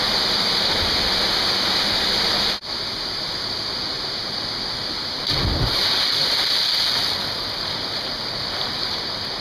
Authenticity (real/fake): real